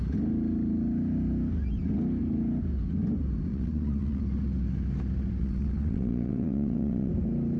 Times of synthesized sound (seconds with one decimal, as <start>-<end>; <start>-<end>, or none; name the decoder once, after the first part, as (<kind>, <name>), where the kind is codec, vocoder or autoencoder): 3.5-4.2 (vocoder, WaveNeXt); 5.4-7.1